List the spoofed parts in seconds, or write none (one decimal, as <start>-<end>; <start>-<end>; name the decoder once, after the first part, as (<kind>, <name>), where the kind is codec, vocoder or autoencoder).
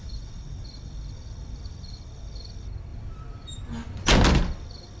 0.0-0.6 (vocoder, BigVGAN v2); 2.9-3.6